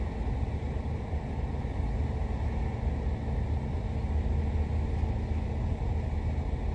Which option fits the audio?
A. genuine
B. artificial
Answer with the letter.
A